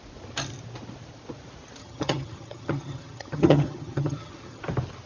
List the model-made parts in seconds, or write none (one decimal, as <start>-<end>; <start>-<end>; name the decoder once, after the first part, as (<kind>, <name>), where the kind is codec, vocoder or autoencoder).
1.8-4.6 (vocoder, HiFi-GAN)